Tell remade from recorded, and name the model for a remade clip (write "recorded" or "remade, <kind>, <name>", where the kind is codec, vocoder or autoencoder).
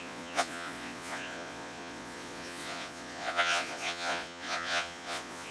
remade, vocoder, Vocos